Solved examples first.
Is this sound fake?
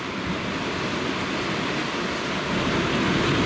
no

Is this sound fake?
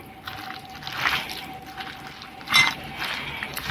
no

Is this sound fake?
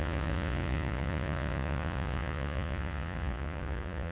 yes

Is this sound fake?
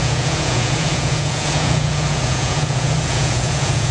yes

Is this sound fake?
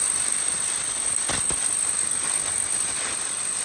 no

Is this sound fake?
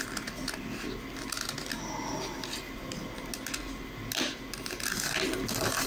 no